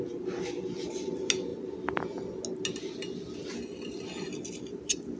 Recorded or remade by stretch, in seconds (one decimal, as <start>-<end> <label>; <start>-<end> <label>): 0.0-5.2 recorded